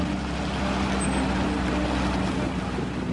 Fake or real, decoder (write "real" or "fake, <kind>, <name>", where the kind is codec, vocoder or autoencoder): real